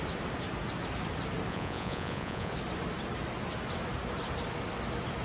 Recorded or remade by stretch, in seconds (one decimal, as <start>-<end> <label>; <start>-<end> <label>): 0.0-1.5 recorded; 1.5-2.5 remade; 2.5-5.2 recorded